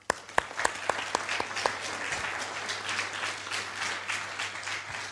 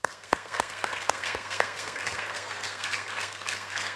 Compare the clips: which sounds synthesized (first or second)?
second